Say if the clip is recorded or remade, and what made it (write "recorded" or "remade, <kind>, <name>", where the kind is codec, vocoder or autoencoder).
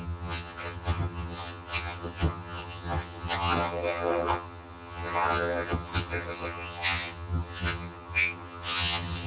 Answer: remade, vocoder, HiFi-GAN